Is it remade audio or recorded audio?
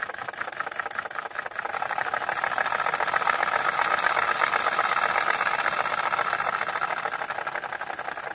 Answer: recorded